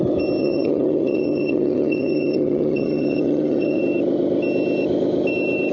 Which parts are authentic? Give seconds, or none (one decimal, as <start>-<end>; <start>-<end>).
0.0-0.4; 3.8-5.7